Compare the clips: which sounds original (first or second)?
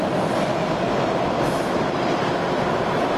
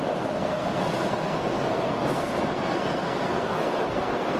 first